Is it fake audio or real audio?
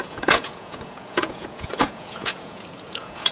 fake